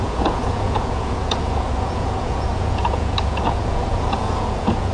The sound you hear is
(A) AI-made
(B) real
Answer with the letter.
A